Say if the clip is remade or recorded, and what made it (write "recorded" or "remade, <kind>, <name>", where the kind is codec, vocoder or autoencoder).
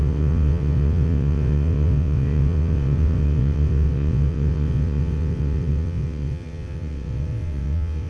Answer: remade, vocoder, WaveNeXt